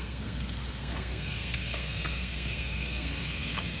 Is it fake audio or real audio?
fake